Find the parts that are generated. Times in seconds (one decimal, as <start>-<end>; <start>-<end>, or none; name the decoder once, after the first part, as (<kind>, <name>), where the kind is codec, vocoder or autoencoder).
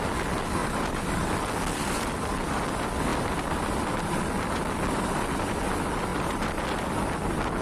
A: 0.6-1.3 (vocoder, BigVGAN v2); 6.1-6.6